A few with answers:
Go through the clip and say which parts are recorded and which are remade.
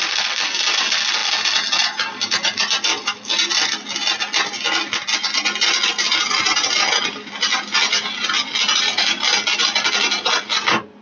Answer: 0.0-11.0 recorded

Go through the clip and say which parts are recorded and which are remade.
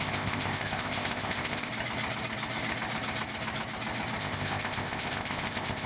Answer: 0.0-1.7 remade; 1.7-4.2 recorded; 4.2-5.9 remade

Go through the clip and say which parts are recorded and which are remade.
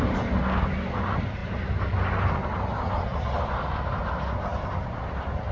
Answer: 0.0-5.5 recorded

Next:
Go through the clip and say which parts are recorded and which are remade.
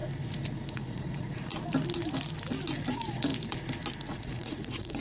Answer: 0.0-0.7 recorded; 0.7-1.5 remade; 1.5-2.9 recorded; 2.9-3.3 remade; 3.3-4.1 recorded; 4.1-5.0 remade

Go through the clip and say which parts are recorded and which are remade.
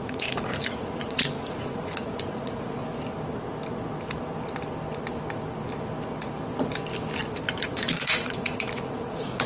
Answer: 0.0-2.8 remade; 2.8-7.6 recorded; 7.6-9.5 remade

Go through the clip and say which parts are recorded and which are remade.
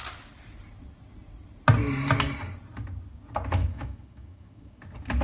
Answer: 0.0-3.6 recorded; 3.6-4.8 remade; 4.8-5.2 recorded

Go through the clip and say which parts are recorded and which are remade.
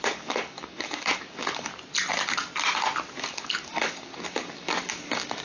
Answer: 0.0-1.7 remade; 1.7-3.2 recorded; 3.2-5.4 remade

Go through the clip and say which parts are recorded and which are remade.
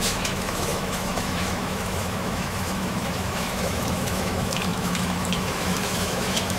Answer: 0.0-6.6 remade